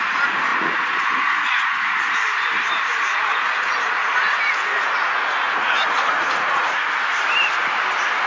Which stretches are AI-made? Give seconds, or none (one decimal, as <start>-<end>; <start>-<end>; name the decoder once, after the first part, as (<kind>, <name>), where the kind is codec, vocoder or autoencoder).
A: 0.5-1.8 (vocoder, Vocos); 3.3-6.8